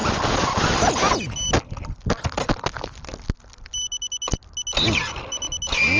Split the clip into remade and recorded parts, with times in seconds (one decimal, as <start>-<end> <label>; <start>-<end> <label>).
0.0-6.0 recorded